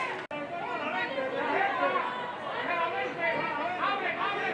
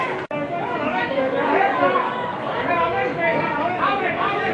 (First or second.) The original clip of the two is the first